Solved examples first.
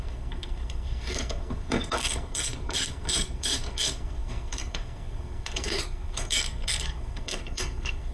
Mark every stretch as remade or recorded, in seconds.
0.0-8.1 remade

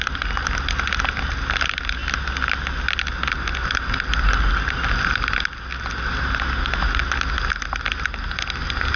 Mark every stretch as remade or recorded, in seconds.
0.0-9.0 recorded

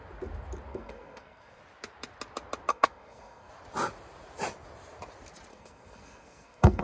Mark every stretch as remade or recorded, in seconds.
0.0-0.7 recorded; 0.7-1.6 remade; 1.6-2.7 recorded; 2.7-3.5 remade; 3.5-5.5 recorded; 5.5-6.8 remade

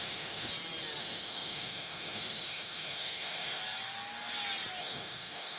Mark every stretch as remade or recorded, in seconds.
0.0-0.5 remade; 0.5-1.0 recorded; 1.0-3.6 remade; 3.6-4.8 recorded; 4.8-5.6 remade

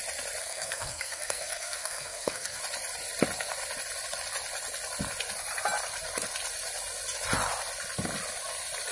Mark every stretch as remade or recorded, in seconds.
0.0-0.4 recorded; 0.4-2.6 remade; 2.6-8.9 recorded

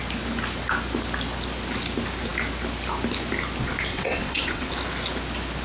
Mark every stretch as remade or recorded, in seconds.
0.0-3.9 recorded; 3.9-4.7 remade; 4.7-5.6 recorded

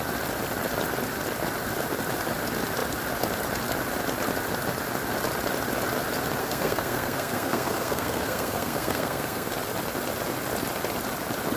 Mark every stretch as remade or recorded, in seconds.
0.0-6.4 recorded; 6.4-9.5 remade; 9.5-11.6 recorded